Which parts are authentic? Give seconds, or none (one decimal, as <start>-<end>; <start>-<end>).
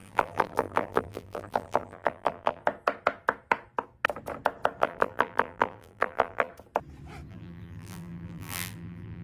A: 2.6-4.8; 6.5-7.3